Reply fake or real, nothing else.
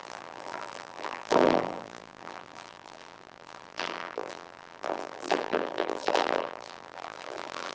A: fake